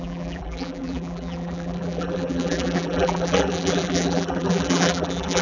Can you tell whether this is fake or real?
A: fake